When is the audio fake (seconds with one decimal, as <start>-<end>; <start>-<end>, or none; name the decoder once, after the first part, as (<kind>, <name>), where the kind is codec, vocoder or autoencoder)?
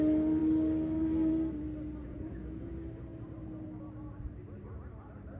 2.0-2.7 (vocoder, Vocos)